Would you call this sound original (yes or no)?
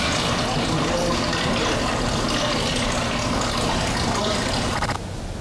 yes